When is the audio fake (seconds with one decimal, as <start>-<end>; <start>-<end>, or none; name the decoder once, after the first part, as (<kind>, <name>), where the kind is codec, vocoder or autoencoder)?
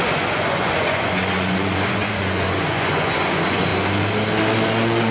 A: 0.0-3.7 (vocoder, Vocos)